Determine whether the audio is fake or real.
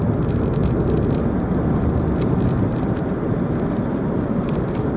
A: real